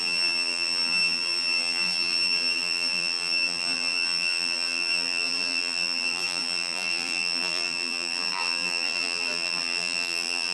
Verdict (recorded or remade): remade